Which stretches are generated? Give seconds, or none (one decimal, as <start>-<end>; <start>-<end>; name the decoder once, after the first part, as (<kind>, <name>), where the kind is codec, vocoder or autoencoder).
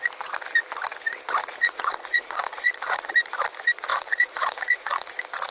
1.6-3.1 (vocoder, Vocos); 3.9-5.1